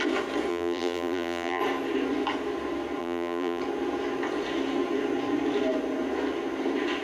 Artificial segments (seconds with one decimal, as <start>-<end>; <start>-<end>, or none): 0.5-1.6; 3.0-3.6